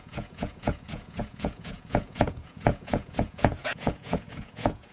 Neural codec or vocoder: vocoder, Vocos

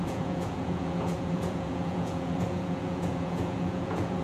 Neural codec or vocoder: vocoder, Vocos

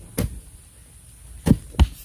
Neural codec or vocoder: none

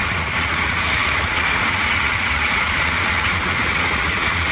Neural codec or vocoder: vocoder, Vocos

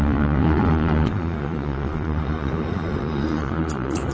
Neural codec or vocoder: vocoder, Vocos